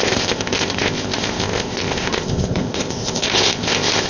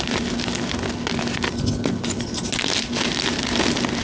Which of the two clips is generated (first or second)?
first